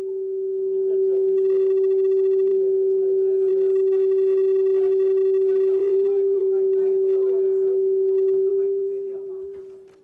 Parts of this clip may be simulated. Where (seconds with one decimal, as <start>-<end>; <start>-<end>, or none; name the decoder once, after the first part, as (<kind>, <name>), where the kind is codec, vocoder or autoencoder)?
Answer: 5.8-6.4 (vocoder, BigVGAN v2); 8.5-9.6